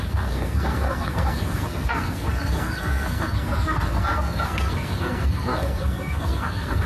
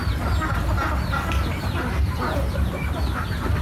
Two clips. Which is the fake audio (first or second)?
first